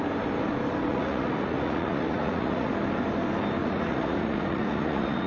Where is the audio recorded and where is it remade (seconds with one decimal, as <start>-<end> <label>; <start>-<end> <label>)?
0.0-0.9 recorded; 0.9-2.7 remade; 2.7-3.6 recorded; 3.6-5.3 remade